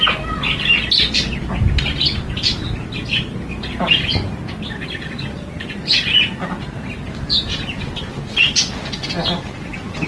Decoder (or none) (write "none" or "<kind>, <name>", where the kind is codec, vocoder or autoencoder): none